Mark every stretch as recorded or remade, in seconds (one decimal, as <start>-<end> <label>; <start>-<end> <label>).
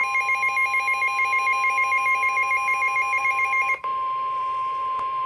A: 0.0-3.2 recorded; 3.2-5.3 remade